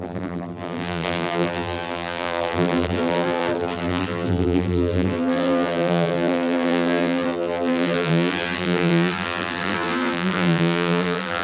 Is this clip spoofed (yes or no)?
yes